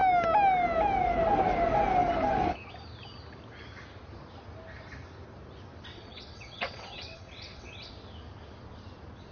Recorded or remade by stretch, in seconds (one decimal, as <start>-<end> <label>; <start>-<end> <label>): 0.0-5.9 recorded; 5.9-7.9 remade; 7.9-9.3 recorded

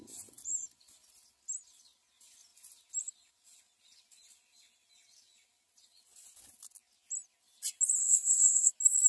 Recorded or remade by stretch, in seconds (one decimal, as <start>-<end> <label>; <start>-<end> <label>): 0.0-8.0 recorded; 8.0-8.7 remade; 8.7-9.1 recorded

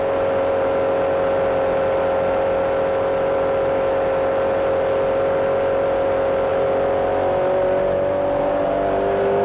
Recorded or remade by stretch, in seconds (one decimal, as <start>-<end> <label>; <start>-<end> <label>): 0.0-9.4 recorded

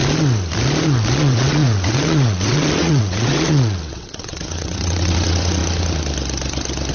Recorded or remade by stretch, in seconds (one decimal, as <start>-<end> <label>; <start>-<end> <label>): 0.0-1.2 recorded; 1.2-5.6 remade; 5.6-6.9 recorded

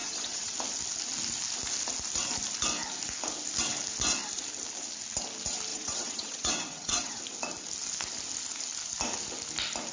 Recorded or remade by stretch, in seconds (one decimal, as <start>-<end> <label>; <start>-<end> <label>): 0.0-0.5 remade; 0.5-5.7 recorded; 5.7-7.2 remade; 7.2-9.9 recorded

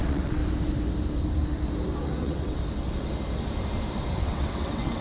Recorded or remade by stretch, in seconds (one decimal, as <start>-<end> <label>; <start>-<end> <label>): 0.0-0.4 remade; 0.4-2.0 recorded; 2.0-2.6 remade; 2.6-4.2 recorded; 4.2-5.0 remade

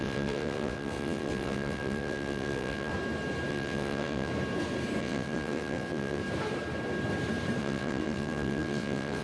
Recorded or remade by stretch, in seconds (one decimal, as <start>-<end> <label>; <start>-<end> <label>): 0.0-2.9 remade; 2.9-3.5 recorded; 3.5-4.3 remade; 4.3-5.0 recorded; 5.0-6.2 remade; 6.2-7.6 recorded; 7.6-9.2 remade